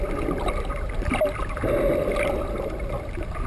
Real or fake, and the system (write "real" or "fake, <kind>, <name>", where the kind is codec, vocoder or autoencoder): real